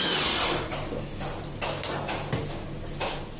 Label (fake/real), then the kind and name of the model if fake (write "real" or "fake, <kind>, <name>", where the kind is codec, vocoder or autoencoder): real